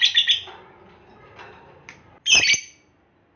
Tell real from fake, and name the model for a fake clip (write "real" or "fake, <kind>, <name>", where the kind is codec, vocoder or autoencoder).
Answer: real